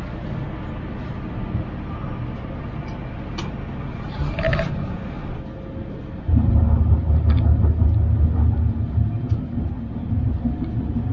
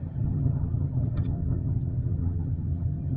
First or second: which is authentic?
first